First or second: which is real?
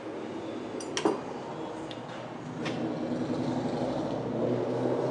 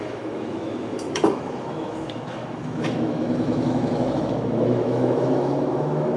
first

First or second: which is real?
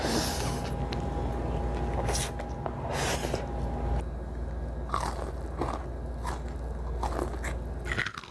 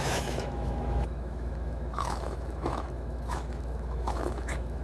first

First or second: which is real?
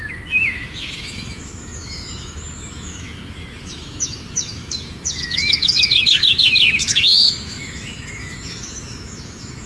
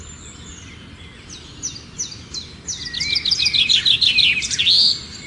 second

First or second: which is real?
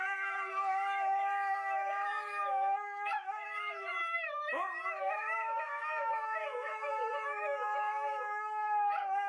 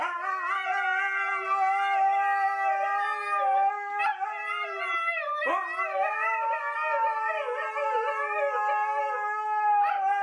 second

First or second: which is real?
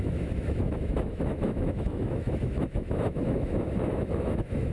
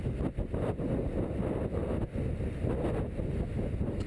second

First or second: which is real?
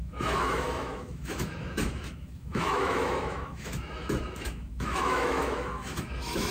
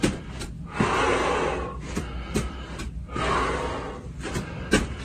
second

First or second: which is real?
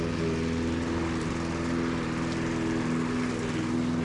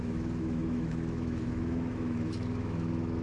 first